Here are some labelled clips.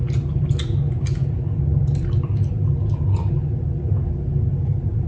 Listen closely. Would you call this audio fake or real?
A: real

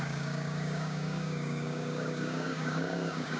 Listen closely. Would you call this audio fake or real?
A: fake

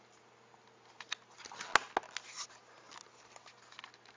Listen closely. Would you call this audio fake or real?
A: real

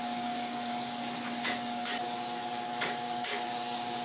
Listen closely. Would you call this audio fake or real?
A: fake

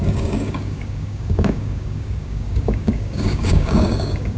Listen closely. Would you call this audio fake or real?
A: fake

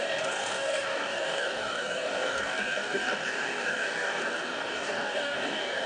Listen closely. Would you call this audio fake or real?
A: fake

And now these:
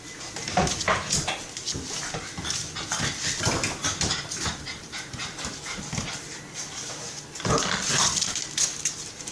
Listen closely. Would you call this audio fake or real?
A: real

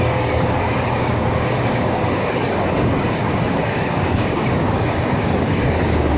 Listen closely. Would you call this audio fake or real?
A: fake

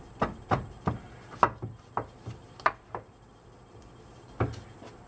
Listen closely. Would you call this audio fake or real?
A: real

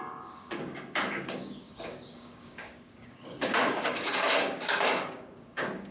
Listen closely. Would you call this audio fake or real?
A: fake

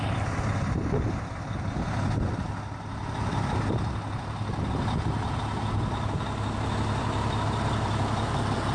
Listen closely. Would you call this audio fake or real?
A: real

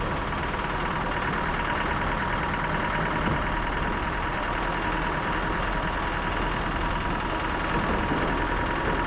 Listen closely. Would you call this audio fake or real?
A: real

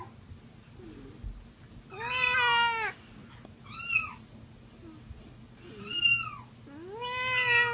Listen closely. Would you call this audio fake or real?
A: real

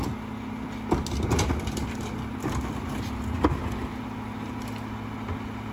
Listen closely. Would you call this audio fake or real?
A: real